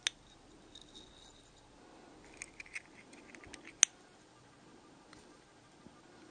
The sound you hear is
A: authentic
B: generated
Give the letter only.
A